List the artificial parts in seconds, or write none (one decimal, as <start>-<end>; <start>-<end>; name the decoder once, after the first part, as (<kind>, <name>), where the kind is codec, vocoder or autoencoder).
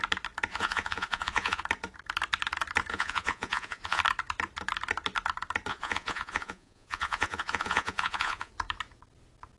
0.5-1.6 (vocoder, Vocos); 2.9-4.0; 5.7-8.5